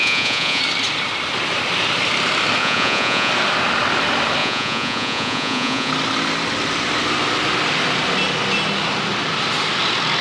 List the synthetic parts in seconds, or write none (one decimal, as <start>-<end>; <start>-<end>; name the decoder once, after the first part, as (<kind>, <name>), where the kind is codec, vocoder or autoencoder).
0.0-0.6 (vocoder, Vocos); 2.6-3.3; 4.4-5.9